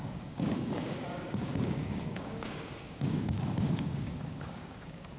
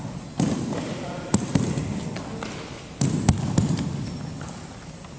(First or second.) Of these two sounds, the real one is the second